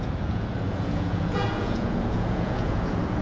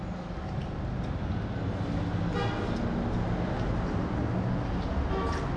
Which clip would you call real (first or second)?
second